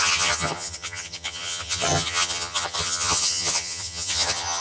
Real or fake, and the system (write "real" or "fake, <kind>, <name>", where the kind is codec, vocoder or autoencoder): fake, vocoder, HiFi-GAN